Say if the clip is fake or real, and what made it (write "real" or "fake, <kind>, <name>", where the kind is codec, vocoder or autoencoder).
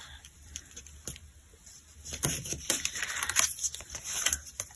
fake, vocoder, BigVGAN v2